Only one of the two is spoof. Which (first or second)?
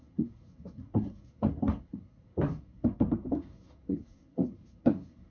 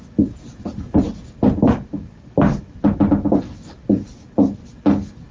first